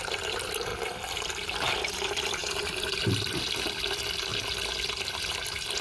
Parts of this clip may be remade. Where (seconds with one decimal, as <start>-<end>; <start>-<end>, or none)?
0.0-5.8